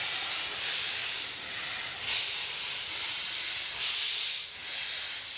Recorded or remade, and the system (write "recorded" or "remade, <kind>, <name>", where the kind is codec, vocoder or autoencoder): recorded